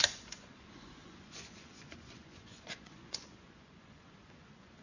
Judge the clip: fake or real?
fake